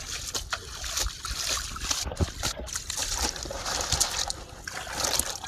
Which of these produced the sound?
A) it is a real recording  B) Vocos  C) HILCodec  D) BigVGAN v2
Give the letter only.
A